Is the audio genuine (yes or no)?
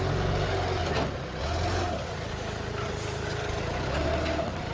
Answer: yes